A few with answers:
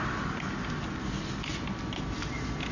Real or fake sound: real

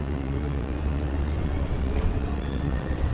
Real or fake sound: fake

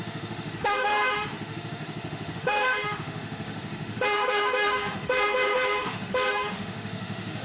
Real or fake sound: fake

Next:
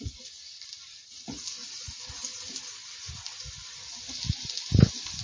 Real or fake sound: real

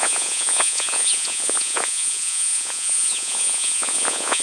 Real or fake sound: fake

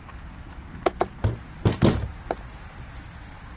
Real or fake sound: real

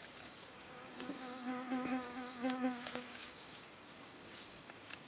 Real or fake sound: fake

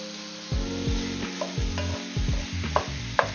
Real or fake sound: real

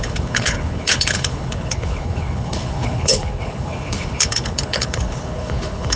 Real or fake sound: fake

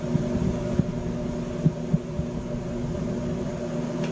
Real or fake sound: real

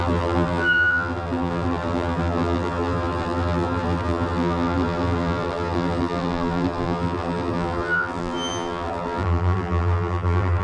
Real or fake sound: fake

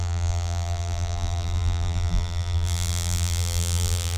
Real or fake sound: fake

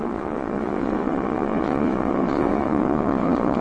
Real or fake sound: fake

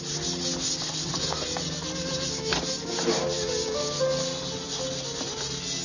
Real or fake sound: real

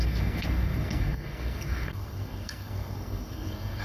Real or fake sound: fake